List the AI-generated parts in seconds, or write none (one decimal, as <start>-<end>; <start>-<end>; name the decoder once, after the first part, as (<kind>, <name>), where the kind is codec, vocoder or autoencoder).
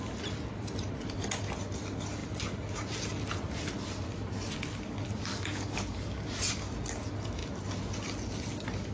5.3-6.3 (codec, DAC)